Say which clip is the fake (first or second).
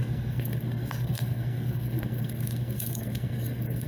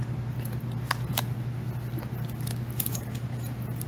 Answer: first